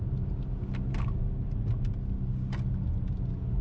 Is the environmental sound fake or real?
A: real